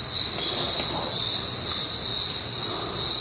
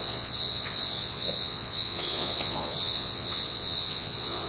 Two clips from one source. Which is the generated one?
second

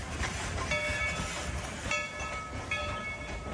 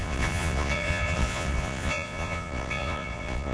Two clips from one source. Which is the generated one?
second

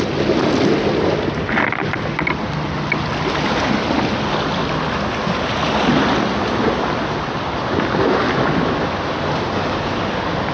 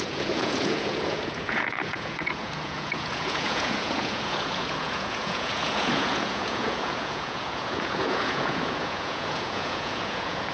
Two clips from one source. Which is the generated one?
second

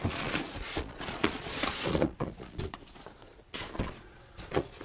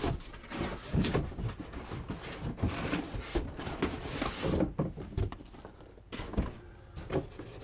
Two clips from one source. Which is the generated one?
first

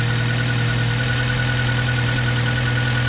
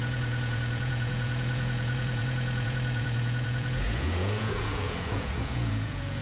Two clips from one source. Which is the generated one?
second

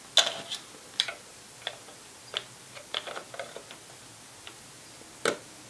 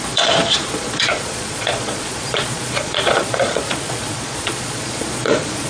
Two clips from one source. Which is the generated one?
second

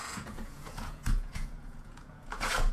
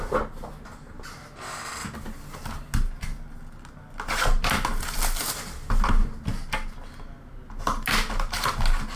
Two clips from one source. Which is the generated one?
first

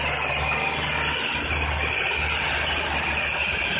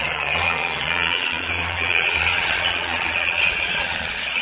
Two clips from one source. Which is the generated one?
second